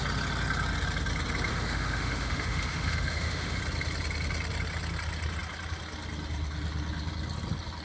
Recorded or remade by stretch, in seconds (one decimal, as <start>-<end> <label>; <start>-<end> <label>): 0.0-1.5 recorded; 1.5-3.6 remade; 3.6-7.8 recorded